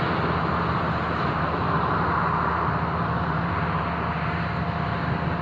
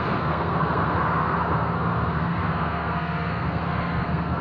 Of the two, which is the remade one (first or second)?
second